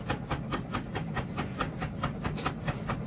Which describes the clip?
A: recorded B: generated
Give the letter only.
A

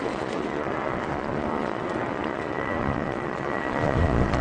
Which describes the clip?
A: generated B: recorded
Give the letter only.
A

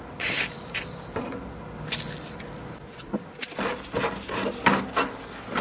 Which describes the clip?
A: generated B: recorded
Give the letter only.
B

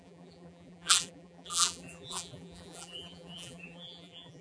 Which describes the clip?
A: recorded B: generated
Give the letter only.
B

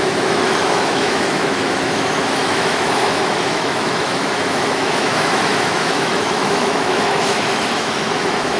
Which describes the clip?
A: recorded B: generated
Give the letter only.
B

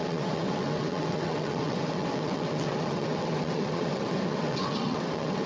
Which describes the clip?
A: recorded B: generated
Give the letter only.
B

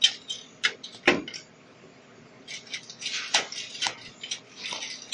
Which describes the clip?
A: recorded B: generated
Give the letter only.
A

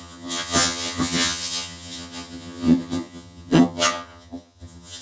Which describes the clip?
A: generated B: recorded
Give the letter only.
A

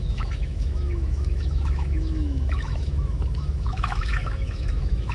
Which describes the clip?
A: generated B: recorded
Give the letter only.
A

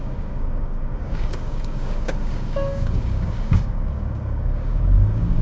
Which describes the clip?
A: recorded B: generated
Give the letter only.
B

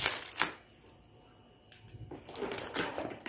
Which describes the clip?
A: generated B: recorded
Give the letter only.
B